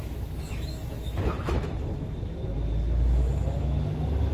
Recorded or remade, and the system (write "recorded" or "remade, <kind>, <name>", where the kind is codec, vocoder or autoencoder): remade, autoencoder, DAC-VAE